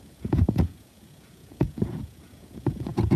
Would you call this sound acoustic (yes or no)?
no